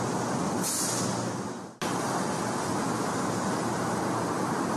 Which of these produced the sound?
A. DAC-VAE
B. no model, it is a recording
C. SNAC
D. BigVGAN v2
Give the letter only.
B